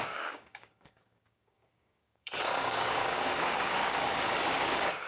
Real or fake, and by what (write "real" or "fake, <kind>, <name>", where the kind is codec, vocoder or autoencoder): fake, codec, DAC